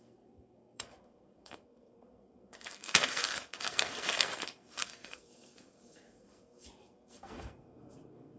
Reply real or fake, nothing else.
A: fake